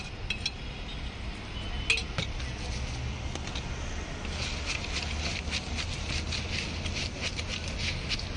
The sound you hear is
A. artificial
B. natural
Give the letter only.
B